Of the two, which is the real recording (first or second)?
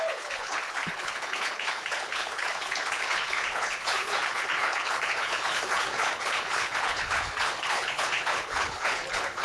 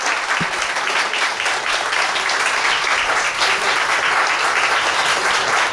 second